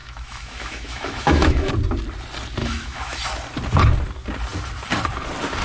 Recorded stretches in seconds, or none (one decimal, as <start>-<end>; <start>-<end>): 1.7-2.6; 3.2-5.6